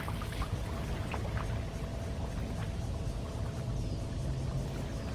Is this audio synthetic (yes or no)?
no